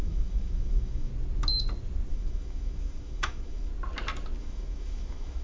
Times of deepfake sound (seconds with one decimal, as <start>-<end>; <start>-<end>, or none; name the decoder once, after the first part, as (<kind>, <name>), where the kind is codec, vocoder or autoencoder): 0.0-1.1 (autoencoder, DAC-VAE); 2.1-3.7; 4.4-5.4